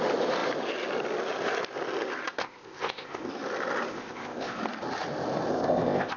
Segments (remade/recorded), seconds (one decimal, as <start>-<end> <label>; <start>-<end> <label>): 0.0-2.4 recorded; 2.4-3.3 remade; 3.3-3.9 recorded; 3.9-4.6 remade; 4.6-5.5 recorded; 5.5-6.2 remade